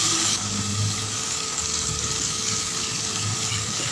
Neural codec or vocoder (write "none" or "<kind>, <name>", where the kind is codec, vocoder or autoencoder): codec, DAC